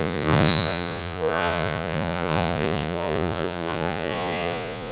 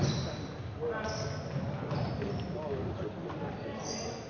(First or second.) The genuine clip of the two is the second